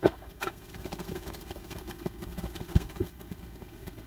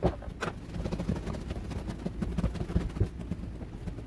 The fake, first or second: first